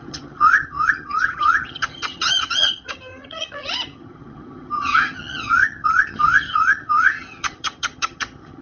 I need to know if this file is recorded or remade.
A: remade